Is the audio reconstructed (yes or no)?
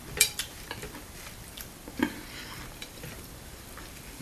yes